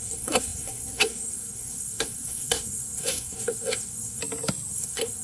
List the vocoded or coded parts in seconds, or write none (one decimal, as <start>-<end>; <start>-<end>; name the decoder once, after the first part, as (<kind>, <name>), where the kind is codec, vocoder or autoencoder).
0.0-4.2 (codec, SNAC); 4.7-5.2